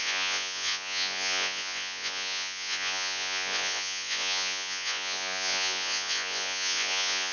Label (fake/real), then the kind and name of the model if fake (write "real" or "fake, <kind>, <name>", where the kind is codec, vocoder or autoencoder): fake, vocoder, Vocos